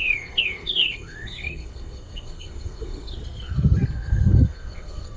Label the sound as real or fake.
fake